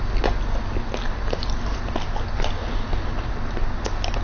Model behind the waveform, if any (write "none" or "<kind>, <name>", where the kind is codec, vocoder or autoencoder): none